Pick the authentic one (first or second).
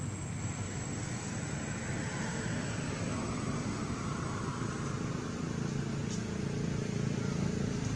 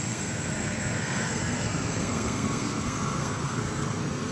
first